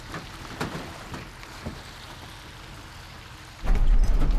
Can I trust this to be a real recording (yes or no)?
yes